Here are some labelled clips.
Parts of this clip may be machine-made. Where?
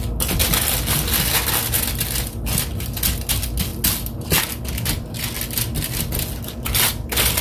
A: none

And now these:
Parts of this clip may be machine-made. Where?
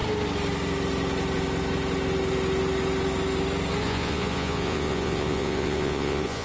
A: 3.8-6.4 (vocoder, Vocos)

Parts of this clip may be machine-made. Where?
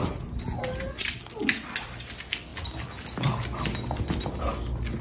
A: none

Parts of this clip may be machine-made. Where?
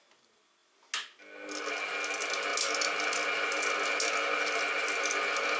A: none